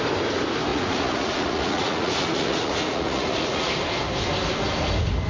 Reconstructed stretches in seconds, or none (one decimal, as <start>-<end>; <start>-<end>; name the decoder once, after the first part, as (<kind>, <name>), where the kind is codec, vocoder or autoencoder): 0.7-3.7 (vocoder, Vocos)